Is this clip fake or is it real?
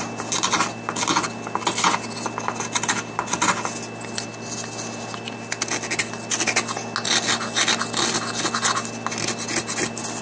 real